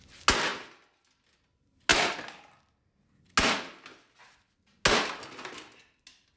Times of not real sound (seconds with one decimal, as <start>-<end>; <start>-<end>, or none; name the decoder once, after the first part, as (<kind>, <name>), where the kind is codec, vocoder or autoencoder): none